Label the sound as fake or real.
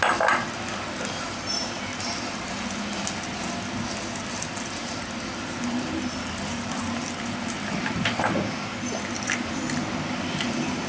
real